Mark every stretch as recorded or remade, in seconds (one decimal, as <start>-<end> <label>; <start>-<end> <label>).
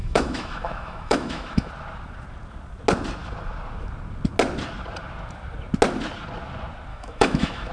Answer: 0.0-1.7 remade; 1.7-6.9 recorded; 6.9-7.7 remade